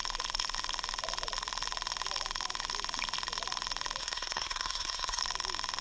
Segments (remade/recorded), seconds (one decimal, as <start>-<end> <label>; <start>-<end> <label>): 0.0-4.0 recorded; 4.0-5.2 remade; 5.2-5.8 recorded